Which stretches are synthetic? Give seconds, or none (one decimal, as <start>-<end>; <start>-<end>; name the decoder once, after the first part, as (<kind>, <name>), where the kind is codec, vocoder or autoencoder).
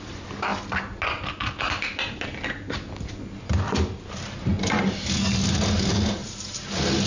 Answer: none